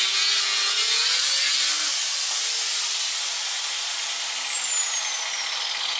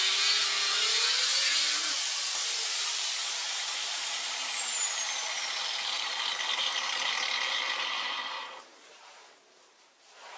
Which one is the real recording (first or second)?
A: first